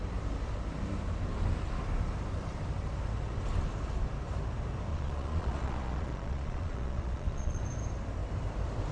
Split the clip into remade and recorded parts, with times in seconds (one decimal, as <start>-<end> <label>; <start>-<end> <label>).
0.0-4.9 recorded; 4.9-7.6 remade; 7.6-8.9 recorded